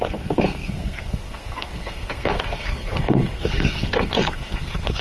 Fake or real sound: fake